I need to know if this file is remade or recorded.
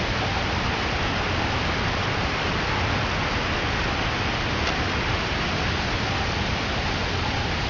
recorded